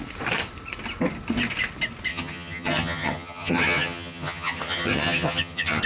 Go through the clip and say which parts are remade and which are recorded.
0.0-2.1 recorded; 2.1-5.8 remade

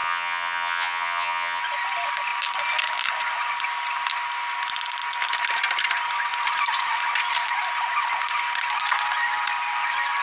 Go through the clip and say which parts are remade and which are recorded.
0.0-1.6 remade; 1.6-10.2 recorded

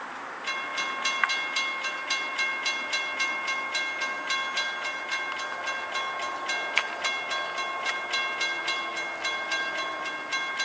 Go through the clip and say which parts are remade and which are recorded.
0.0-10.6 recorded